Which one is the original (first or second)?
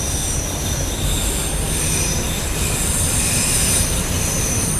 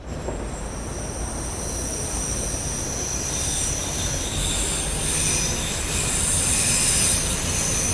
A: second